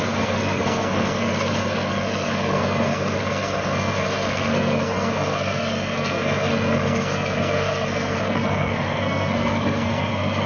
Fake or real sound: fake